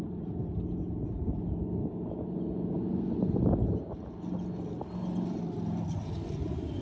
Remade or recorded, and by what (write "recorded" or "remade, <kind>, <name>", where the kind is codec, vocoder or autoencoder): recorded